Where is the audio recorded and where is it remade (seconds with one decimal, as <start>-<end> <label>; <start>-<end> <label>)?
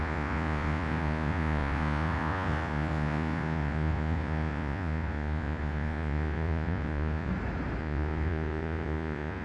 0.0-7.3 remade; 7.3-7.8 recorded; 7.8-9.4 remade